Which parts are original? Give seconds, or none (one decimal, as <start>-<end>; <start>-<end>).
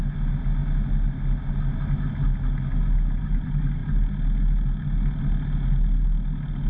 0.0-6.7